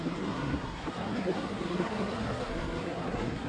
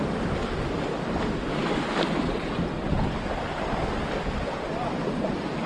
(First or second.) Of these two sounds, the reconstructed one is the first